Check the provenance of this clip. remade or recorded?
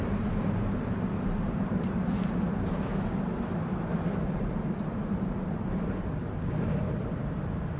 remade